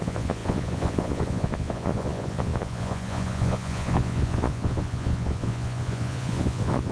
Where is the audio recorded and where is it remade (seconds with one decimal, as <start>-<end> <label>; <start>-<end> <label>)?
0.0-6.9 remade